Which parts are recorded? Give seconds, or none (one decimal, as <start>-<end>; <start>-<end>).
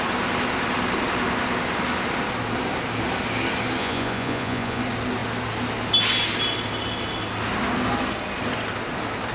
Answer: 0.0-3.8; 4.8-9.3